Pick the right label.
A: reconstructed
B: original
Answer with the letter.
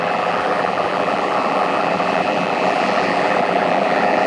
A